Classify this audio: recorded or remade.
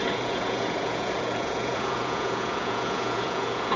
remade